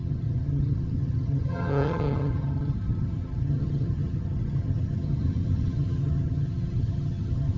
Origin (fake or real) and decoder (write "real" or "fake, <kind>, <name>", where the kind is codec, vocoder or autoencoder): fake, vocoder, HiFi-GAN